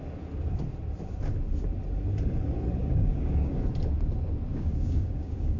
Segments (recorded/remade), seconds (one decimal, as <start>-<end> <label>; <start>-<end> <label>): 0.0-2.8 recorded; 2.8-3.6 remade; 3.6-4.5 recorded; 4.5-5.6 remade